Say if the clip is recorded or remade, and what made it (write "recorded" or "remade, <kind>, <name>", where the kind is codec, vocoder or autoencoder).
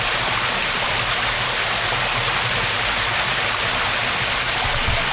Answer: recorded